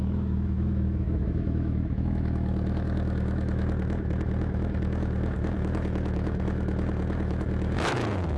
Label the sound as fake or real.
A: fake